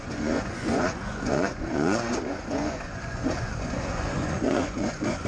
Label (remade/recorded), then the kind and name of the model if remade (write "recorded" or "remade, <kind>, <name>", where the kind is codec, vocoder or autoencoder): remade, vocoder, Vocos